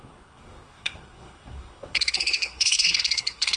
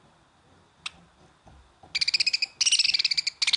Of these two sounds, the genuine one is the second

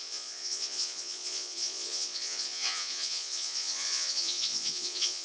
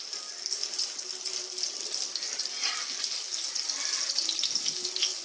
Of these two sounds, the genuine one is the second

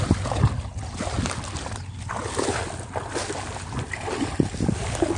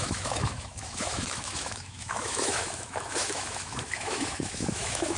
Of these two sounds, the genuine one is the first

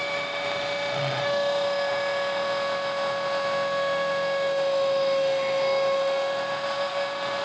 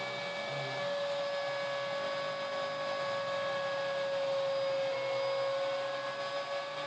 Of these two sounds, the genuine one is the second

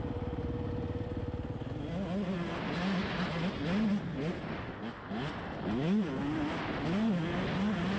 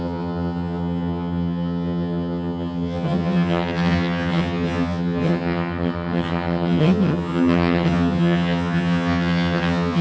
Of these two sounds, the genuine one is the first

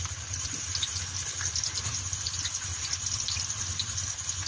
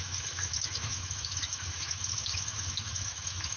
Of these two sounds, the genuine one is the first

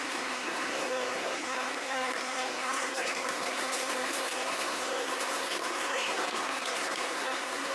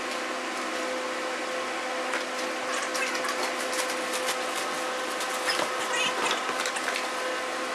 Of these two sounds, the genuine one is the second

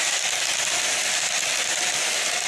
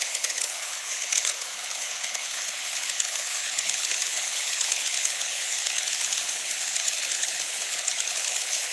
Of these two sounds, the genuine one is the first